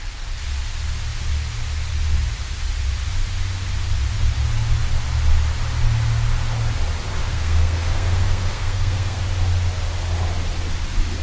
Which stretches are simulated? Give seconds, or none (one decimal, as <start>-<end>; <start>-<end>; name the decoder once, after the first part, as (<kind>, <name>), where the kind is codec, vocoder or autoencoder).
7.2-9.2 (codec, SNAC)